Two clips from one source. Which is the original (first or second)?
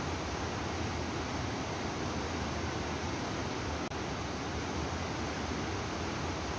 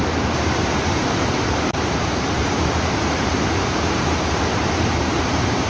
first